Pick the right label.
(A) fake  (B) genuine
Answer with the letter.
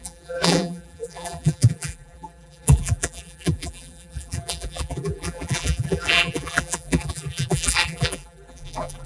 A